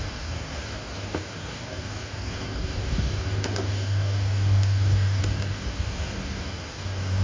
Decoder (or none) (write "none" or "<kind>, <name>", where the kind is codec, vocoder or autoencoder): codec, DAC